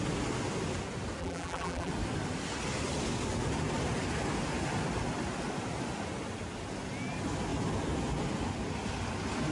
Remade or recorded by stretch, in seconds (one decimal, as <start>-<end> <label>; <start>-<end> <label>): 0.0-1.2 recorded; 1.2-1.9 remade; 1.9-9.5 recorded